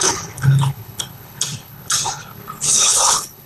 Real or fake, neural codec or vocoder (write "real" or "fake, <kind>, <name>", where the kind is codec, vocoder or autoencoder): fake, codec, HILCodec